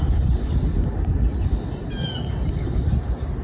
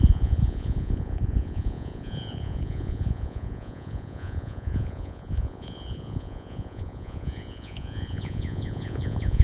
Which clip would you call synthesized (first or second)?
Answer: second